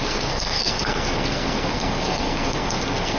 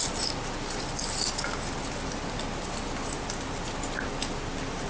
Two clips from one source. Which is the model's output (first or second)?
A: first